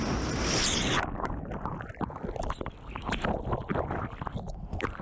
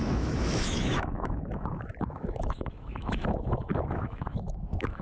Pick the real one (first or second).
first